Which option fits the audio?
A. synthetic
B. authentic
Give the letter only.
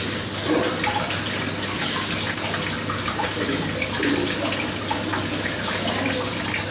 B